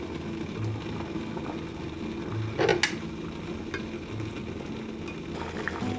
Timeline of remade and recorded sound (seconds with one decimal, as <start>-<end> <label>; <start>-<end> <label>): 0.0-6.0 recorded